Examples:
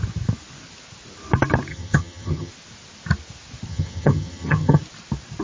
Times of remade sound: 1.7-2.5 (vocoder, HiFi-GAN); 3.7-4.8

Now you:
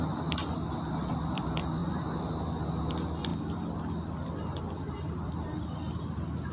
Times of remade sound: 3.3-4.4 (vocoder, BigVGAN v2)

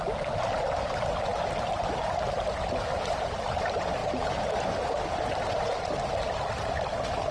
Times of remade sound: 4.0-4.8 (vocoder, BigVGAN v2)

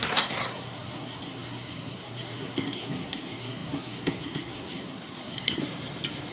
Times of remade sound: 0.0-5.6 (codec, SNAC)

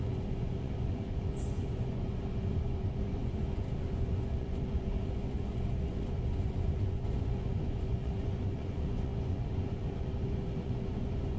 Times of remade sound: 0.0-11.4 (vocoder, Vocos)

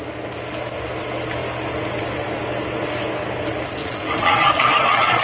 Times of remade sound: 3.8-5.2 (vocoder, Vocos)

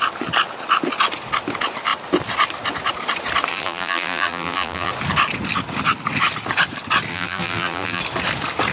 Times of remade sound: 3.5-4.9 (vocoder, BigVGAN v2); 7.1-8.0